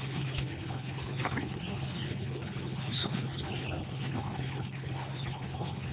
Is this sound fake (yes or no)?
yes